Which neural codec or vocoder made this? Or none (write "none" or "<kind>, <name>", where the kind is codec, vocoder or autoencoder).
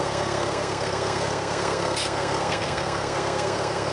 codec, SNAC